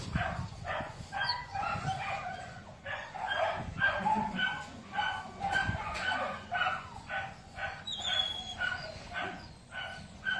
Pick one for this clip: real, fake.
fake